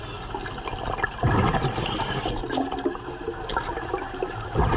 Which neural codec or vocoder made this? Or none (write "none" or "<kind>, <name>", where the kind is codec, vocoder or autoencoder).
none